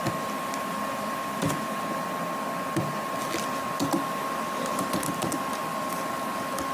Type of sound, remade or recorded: recorded